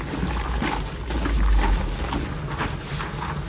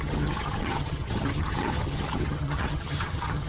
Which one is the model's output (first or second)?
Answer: second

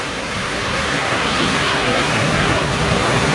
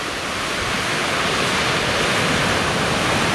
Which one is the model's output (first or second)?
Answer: first